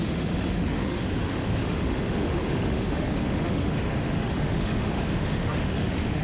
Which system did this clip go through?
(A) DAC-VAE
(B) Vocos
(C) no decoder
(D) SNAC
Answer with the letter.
A